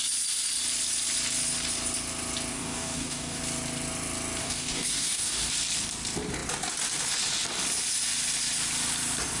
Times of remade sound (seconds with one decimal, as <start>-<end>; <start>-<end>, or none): 2.5-3.4; 4.4-5.5